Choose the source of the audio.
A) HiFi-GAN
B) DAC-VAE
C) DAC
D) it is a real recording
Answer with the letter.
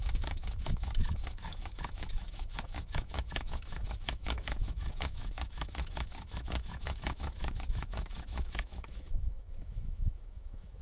B